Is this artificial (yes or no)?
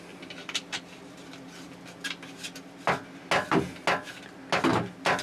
no